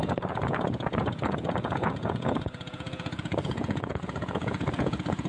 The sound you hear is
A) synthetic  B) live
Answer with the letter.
A